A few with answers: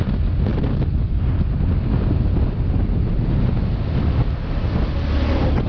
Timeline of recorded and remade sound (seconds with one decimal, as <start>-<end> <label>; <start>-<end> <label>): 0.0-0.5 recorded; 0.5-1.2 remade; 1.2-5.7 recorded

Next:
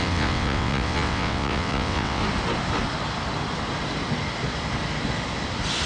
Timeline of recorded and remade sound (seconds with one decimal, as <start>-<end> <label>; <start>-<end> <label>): 0.0-2.2 remade; 2.2-5.9 recorded

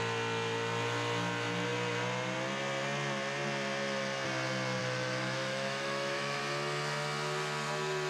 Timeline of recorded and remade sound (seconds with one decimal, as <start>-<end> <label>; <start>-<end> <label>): 0.0-4.8 recorded; 4.8-6.4 remade; 6.4-8.1 recorded